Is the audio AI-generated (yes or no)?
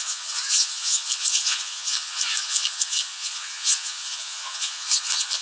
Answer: yes